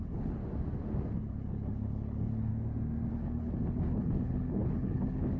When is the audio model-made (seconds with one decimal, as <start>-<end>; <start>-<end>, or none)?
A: 0.0-0.4; 1.3-2.5; 3.1-5.4